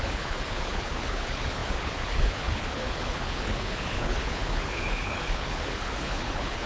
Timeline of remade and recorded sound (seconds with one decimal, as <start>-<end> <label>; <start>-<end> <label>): 0.0-6.7 remade